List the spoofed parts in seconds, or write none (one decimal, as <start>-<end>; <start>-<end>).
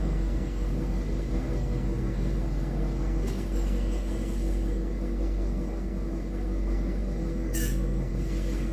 0.0-8.7